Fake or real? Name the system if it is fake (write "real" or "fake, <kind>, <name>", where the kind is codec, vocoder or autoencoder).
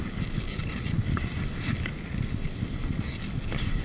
real